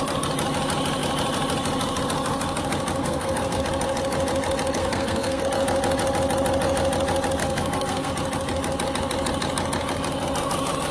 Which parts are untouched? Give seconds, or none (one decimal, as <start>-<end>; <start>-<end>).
0.0-3.0; 3.6-4.8; 5.4-7.4; 8.1-10.9

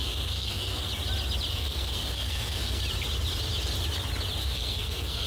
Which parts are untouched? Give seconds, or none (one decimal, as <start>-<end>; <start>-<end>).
0.9-1.5; 2.8-4.4

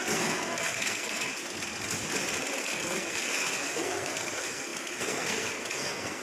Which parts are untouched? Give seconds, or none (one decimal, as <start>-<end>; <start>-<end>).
1.3-2.6

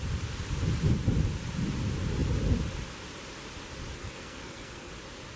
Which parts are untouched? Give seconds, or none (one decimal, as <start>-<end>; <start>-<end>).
0.0-4.0; 4.9-5.4

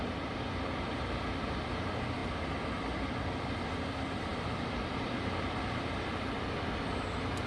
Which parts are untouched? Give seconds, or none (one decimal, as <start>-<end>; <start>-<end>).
0.0-7.5